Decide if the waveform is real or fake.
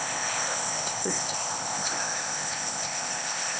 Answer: fake